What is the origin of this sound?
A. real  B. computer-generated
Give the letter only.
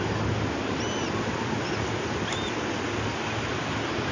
A